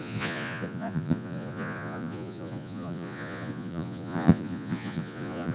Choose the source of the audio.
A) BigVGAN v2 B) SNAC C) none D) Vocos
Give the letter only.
D